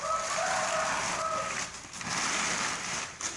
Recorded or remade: recorded